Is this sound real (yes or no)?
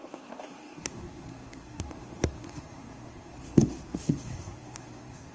no